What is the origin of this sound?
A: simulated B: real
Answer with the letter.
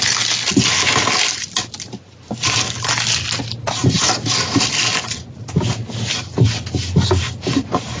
B